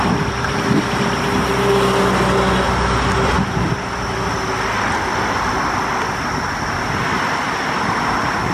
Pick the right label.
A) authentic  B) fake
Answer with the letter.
A